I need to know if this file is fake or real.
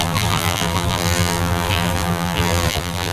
fake